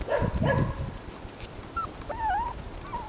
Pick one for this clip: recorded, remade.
recorded